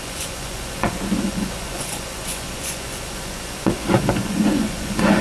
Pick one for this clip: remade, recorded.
remade